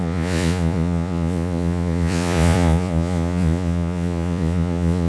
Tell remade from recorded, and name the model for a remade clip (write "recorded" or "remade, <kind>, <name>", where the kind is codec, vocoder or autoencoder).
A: remade, vocoder, Vocos